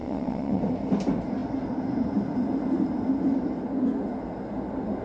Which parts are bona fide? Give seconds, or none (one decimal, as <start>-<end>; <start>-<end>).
0.6-5.0